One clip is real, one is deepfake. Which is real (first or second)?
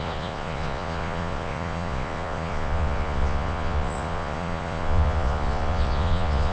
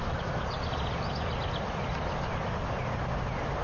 second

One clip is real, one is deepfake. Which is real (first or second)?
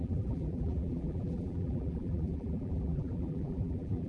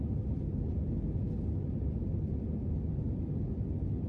second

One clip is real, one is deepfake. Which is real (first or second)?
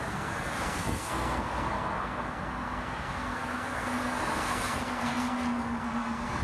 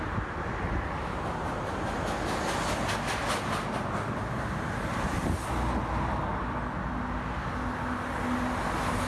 second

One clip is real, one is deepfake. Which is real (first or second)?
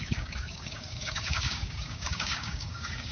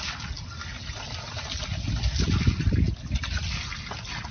second